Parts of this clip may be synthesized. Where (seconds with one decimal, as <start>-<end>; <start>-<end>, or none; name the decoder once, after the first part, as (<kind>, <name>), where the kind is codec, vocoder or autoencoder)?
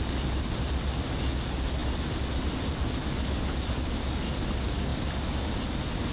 none